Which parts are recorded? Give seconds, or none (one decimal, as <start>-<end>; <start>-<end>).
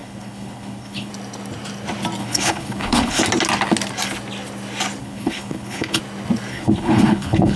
1.1-2.2; 3.2-5.0; 6.0-6.5